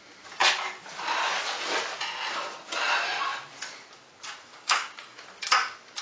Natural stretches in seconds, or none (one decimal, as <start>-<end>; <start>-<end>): 0.0-4.5; 5.2-6.0

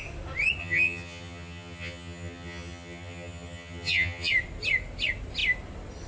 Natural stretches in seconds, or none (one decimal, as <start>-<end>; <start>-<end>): 0.0-0.6; 4.3-6.1

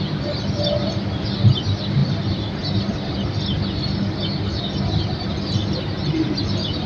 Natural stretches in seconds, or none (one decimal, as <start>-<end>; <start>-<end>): 0.0-6.9

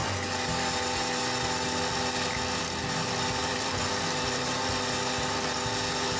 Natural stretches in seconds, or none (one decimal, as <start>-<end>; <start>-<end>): 0.0-3.4; 4.4-6.2

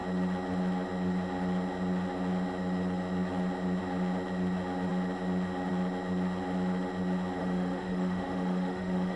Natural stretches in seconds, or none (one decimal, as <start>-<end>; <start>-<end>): 0.0-7.4

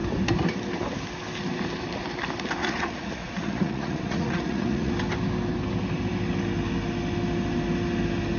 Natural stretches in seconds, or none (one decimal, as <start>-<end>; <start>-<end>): 0.0-2.6; 4.9-8.4

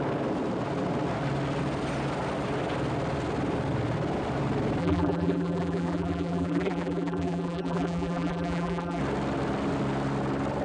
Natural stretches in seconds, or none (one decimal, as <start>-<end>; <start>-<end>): 0.0-4.8; 9.0-10.6

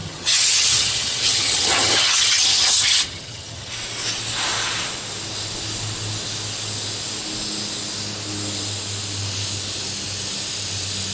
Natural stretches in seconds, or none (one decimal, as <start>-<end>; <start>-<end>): 3.7-11.1